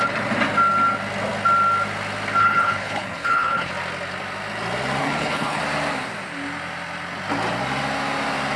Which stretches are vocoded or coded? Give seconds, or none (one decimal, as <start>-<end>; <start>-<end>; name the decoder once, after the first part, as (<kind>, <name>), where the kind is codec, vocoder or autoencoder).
2.4-3.7 (codec, HILCodec); 5.0-5.6